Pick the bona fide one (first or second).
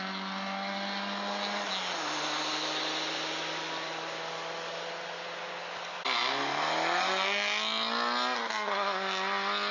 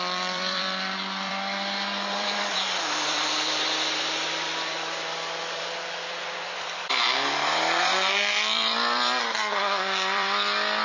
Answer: first